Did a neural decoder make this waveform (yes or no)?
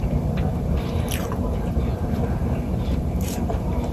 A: yes